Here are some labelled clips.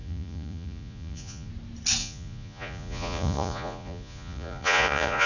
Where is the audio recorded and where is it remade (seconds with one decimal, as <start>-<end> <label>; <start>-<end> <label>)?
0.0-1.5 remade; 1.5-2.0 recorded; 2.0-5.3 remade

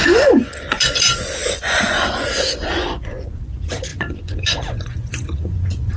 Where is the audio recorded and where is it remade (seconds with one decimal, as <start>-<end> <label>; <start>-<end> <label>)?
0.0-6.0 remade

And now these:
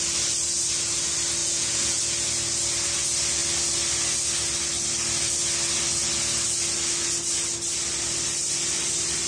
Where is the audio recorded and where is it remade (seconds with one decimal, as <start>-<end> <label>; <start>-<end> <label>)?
0.0-1.4 recorded; 1.4-2.0 remade; 2.0-9.3 recorded

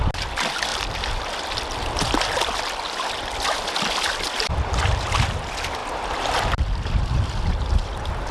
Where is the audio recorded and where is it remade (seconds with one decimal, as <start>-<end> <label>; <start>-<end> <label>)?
0.0-8.3 recorded

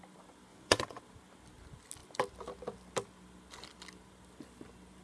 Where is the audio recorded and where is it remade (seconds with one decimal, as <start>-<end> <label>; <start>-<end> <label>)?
0.0-0.5 recorded; 0.5-1.0 remade; 1.0-5.0 recorded